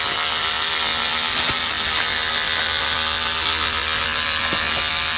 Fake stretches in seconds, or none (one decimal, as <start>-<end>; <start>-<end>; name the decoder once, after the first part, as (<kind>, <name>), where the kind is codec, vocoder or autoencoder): none